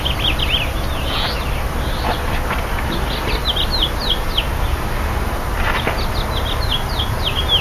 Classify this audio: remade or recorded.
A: recorded